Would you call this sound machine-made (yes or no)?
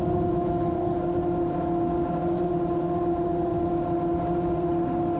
no